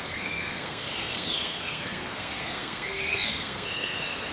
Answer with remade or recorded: remade